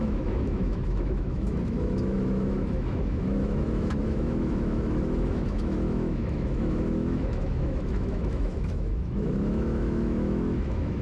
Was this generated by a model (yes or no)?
yes